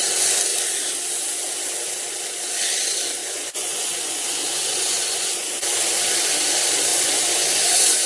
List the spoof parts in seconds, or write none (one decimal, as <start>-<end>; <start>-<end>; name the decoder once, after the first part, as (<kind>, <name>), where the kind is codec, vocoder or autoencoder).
3.2-5.6 (vocoder, Vocos); 6.9-8.1

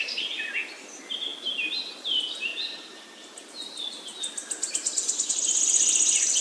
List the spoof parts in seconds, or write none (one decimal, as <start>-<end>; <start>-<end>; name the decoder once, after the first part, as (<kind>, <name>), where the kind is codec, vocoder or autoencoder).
0.0-1.3 (vocoder, BigVGAN v2); 2.0-4.1; 5.3-6.4

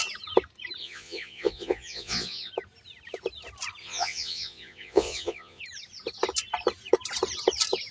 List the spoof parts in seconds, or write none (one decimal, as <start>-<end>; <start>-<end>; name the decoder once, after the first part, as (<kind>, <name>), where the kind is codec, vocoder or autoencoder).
0.8-2.5 (vocoder, Vocos); 3.8-5.6

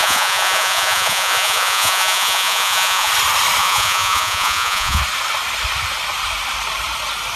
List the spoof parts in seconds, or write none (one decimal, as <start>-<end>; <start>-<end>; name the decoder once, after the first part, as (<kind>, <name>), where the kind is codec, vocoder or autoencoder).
0.0-3.1 (vocoder, Vocos); 3.6-5.0

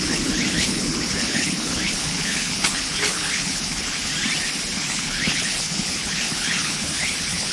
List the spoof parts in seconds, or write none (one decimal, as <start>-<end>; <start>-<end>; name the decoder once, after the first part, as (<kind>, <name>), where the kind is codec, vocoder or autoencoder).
0.0-4.1 (codec, HILCodec); 4.9-7.5

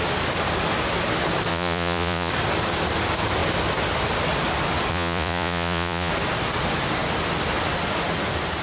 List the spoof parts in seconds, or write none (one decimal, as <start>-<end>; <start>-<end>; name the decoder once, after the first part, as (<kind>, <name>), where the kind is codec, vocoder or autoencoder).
1.5-2.3 (vocoder, Vocos); 4.9-6.1